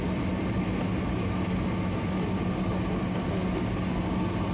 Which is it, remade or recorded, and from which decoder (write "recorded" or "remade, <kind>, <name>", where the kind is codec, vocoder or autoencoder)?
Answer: recorded